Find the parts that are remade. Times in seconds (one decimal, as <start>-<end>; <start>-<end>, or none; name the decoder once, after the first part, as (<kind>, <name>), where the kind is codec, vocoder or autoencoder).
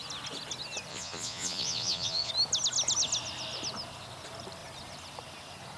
0.9-2.3 (vocoder, Vocos)